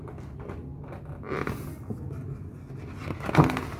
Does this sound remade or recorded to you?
recorded